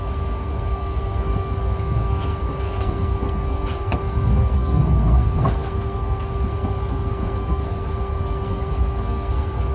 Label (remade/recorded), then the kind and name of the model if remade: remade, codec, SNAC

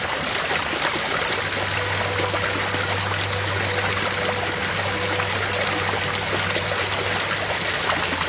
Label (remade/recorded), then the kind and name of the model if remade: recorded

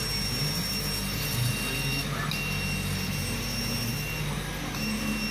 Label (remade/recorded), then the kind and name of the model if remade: recorded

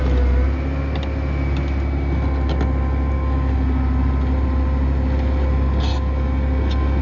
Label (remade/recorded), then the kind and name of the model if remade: recorded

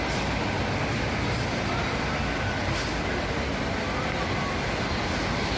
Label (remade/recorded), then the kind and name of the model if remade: recorded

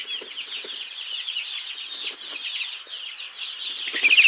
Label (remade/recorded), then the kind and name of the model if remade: recorded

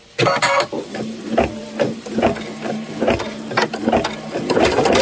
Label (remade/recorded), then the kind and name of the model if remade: recorded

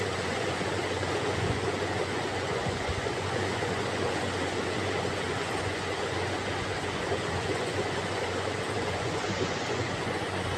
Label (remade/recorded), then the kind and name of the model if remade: remade, vocoder, Vocos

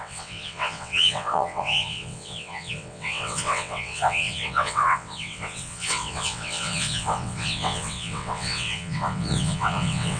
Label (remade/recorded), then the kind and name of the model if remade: remade, vocoder, WaveNeXt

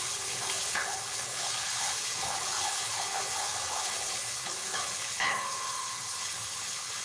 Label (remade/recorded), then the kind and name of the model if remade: remade, codec, HILCodec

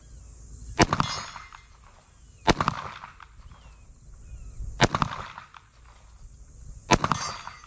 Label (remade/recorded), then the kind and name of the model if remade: recorded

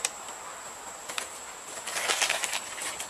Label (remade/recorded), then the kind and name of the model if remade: recorded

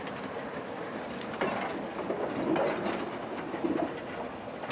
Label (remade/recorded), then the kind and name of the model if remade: recorded